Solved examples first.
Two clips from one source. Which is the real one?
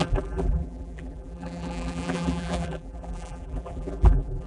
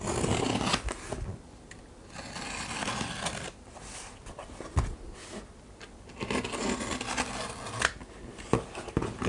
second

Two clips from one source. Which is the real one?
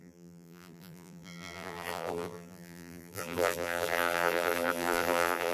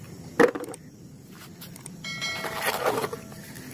second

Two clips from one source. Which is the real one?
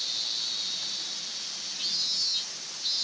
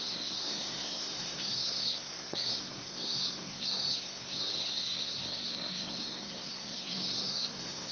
first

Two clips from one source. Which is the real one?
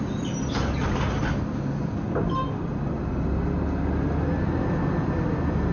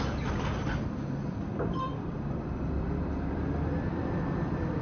first